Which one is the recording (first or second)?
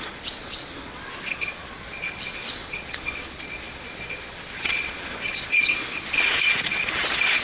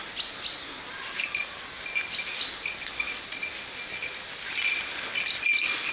second